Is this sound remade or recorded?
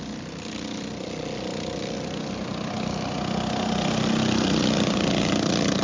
recorded